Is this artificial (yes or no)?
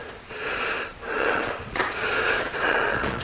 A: yes